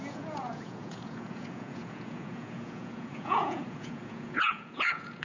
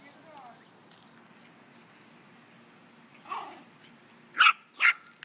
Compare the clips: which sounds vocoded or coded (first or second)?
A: first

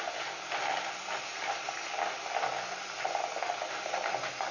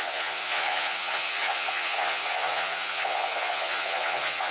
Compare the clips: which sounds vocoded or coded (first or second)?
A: second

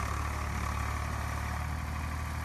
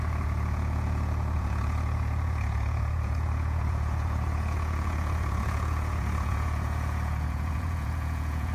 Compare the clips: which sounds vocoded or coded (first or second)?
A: second